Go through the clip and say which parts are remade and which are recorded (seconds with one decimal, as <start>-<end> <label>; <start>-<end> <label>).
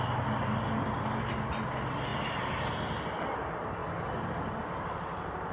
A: 0.0-5.5 recorded